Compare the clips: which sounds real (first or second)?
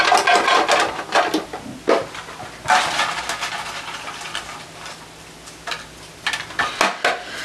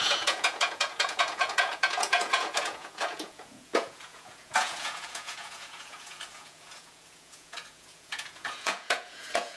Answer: first